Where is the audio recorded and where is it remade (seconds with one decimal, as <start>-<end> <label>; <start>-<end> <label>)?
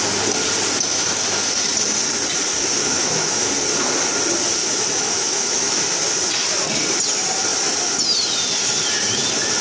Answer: 0.0-2.8 recorded; 2.8-3.5 remade; 3.5-4.6 recorded; 4.6-5.8 remade; 5.8-9.6 recorded